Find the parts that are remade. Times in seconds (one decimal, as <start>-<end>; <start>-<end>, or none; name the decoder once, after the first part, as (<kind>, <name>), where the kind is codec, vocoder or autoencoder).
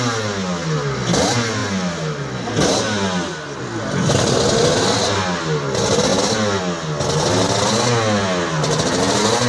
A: none